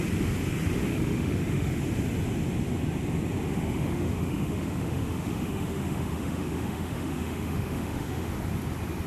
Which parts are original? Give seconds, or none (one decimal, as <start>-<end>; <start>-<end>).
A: 0.0-0.9; 1.8-3.5; 8.3-9.1